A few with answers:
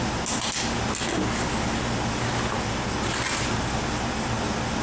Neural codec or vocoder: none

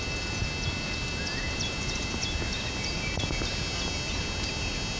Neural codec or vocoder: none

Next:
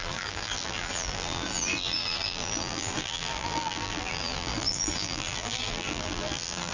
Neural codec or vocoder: vocoder, BigVGAN v2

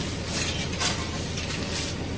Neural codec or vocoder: none